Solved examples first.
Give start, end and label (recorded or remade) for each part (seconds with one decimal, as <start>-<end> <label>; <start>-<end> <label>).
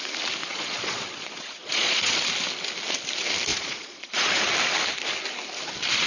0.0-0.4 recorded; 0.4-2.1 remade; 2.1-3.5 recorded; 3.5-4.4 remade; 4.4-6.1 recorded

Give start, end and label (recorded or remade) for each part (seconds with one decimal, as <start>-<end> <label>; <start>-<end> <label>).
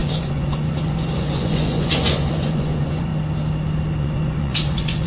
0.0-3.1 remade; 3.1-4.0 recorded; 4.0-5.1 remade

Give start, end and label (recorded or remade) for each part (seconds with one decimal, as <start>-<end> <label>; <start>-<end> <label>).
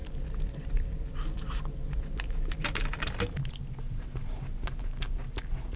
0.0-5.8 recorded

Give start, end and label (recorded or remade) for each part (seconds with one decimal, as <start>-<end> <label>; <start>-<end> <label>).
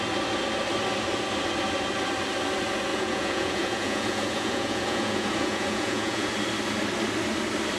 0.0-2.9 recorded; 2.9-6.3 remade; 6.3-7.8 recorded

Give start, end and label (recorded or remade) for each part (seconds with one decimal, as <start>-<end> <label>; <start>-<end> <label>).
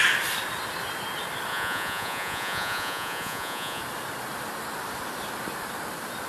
0.0-1.5 recorded; 1.5-3.8 remade; 3.8-6.3 recorded